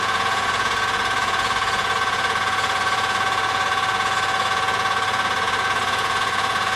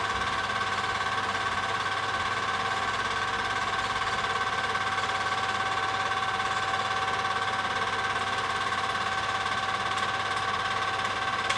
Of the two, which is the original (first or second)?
second